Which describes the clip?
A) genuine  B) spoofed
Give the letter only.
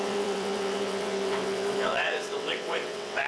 B